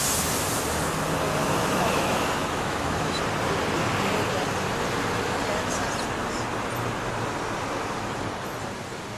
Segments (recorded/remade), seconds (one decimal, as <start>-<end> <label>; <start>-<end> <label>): 0.0-1.4 recorded; 1.4-3.2 remade; 3.2-9.2 recorded